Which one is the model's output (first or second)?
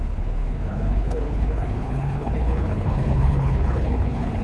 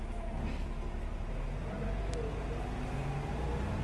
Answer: first